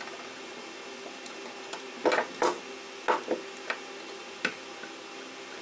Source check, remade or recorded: recorded